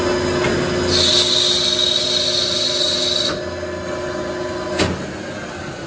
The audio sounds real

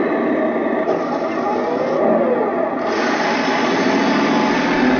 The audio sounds real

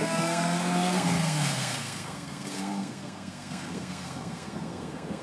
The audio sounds fake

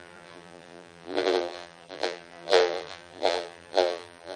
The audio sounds fake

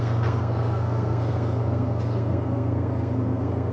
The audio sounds fake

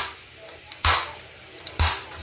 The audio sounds real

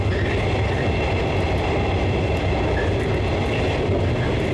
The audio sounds real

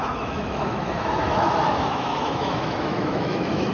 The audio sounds fake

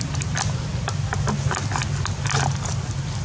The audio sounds real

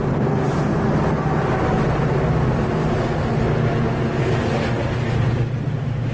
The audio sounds real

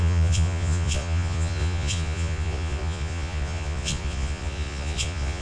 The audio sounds fake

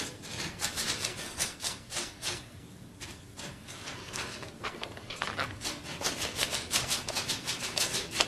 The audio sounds fake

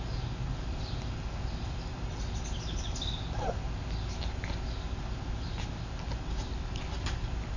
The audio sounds real